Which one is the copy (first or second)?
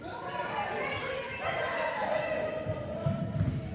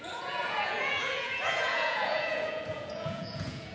second